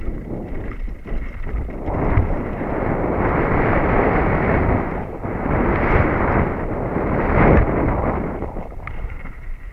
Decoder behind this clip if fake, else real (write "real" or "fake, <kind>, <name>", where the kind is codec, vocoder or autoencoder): fake, vocoder, BigVGAN v2